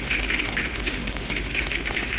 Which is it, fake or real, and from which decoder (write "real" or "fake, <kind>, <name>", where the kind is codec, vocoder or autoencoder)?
fake, autoencoder, DAC-VAE